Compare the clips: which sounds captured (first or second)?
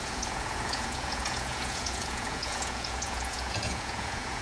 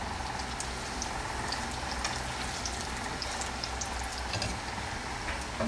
second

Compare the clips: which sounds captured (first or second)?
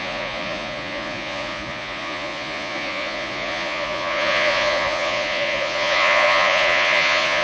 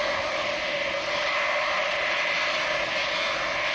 second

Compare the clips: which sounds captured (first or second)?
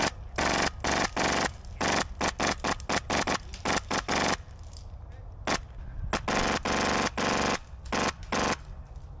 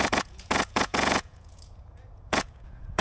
first